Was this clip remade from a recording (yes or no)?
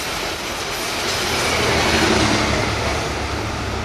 no